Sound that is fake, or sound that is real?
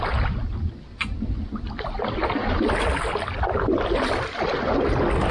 real